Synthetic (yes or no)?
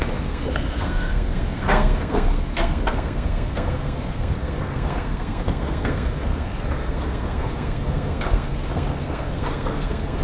yes